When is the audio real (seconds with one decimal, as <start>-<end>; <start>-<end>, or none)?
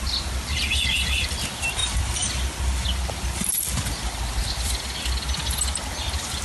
0.0-6.4